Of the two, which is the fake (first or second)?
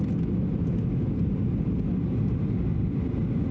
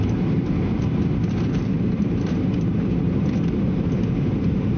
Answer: second